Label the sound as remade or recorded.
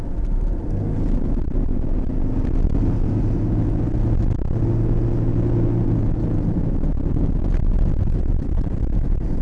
recorded